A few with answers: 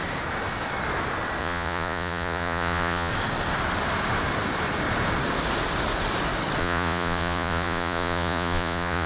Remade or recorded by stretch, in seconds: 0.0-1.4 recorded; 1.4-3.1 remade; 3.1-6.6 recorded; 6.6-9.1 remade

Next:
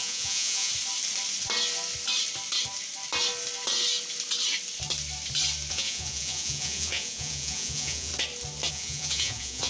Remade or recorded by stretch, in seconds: 0.0-0.7 remade; 0.7-5.7 recorded; 5.7-8.1 remade; 8.1-8.7 recorded; 8.7-9.7 remade

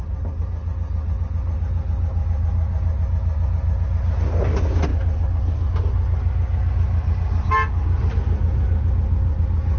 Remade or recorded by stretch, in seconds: 0.0-9.8 recorded

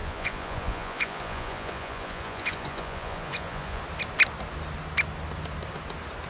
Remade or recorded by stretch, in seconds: 0.0-3.8 remade; 3.8-6.3 recorded

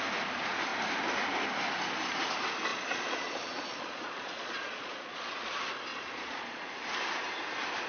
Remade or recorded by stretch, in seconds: 0.0-2.7 recorded; 2.7-5.5 remade; 5.5-5.9 recorded; 5.9-6.6 remade; 6.6-7.9 recorded